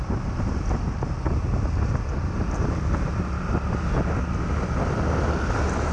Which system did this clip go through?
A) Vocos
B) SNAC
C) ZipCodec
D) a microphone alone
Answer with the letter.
D